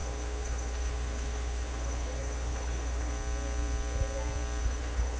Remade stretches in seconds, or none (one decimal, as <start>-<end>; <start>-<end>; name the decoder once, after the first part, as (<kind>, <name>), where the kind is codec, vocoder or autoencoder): 0.0-3.1 (codec, HILCodec); 4.6-5.2